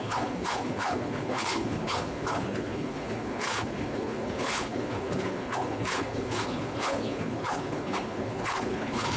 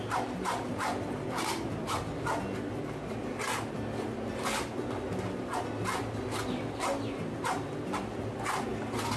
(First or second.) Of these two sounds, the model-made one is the first